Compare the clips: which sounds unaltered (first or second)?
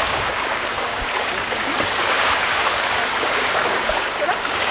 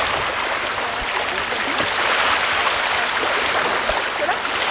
second